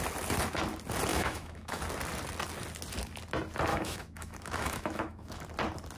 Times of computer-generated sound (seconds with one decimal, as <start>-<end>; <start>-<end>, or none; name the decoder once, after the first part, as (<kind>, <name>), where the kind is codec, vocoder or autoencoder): 1.1-1.8 (autoencoder, DAC-VAE); 3.7-5.4

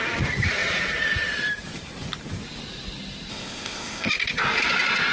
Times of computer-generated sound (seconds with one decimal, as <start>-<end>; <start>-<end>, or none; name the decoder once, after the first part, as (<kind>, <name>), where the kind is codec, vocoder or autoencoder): 3.3-4.1 (codec, ZipCodec)

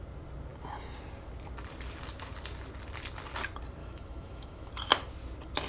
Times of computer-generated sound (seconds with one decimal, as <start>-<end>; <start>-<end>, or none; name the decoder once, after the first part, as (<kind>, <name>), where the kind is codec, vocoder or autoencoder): 3.8-4.7 (autoencoder, DAC-VAE)